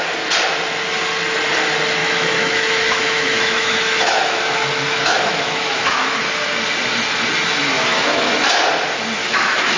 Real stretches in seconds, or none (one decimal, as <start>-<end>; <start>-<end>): 0.0-2.0; 6.2-7.7; 8.3-9.2